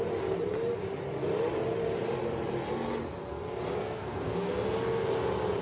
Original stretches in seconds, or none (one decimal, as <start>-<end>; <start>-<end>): 0.0-3.8; 4.5-5.6